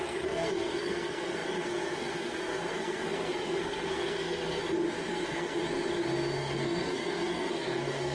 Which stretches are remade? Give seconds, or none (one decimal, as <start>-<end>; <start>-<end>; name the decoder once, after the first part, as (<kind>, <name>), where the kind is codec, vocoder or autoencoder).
0.0-4.6 (codec, SNAC); 5.1-5.6; 6.4-8.1